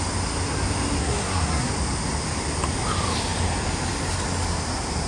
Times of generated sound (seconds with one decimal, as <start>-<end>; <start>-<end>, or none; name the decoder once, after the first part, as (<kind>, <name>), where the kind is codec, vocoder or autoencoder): 1.0-1.7 (codec, SNAC)